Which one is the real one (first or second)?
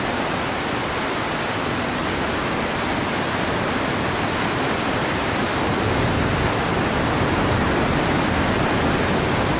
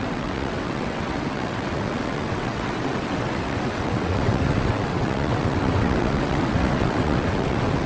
first